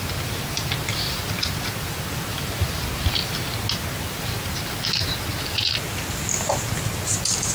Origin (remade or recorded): recorded